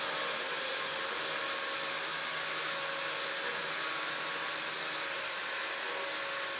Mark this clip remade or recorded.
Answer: recorded